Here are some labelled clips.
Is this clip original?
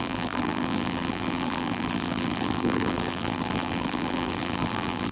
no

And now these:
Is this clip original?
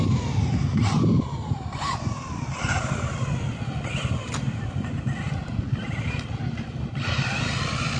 yes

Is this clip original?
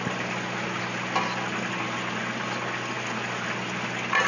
yes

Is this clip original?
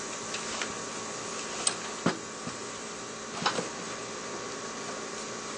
yes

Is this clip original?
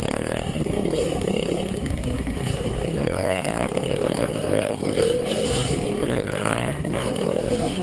no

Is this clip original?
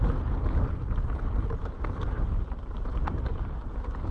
yes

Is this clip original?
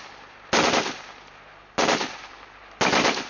yes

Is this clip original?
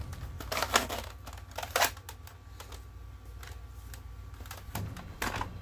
yes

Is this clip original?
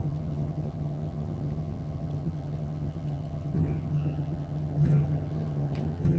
no